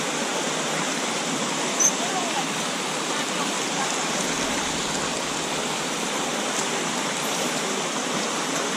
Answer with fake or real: fake